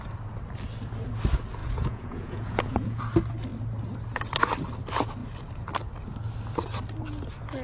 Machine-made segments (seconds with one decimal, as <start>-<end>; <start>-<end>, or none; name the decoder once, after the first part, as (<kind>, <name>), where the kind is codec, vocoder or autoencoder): 1.6-3.0 (vocoder, Vocos)